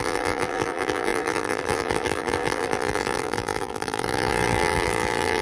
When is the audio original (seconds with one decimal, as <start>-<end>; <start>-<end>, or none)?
none